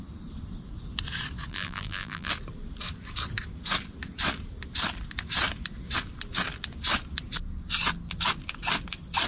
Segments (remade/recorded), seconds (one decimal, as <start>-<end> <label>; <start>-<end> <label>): 0.0-1.5 recorded; 1.5-2.3 remade; 2.3-9.3 recorded